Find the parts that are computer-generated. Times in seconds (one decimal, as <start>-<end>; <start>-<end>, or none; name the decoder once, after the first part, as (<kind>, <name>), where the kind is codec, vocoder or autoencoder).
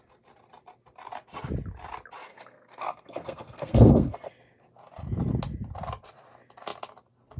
2.3-4.3 (codec, SNAC)